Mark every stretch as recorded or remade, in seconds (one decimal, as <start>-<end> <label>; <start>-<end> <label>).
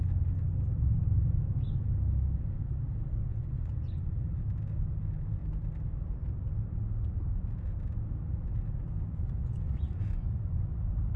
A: 0.0-3.2 recorded; 3.2-4.4 remade; 4.4-9.4 recorded; 9.4-10.6 remade; 10.6-11.2 recorded